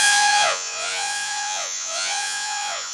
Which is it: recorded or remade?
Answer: remade